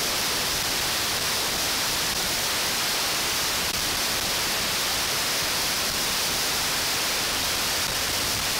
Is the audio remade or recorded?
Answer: remade